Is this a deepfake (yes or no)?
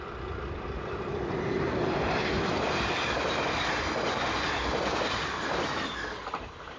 yes